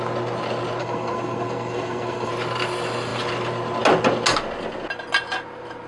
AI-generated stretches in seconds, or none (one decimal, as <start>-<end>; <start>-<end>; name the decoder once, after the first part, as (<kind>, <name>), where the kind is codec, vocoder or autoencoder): 0.8-2.3 (codec, SNAC)